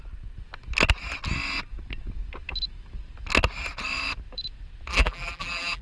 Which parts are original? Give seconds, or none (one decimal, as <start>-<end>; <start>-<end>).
0.0-4.9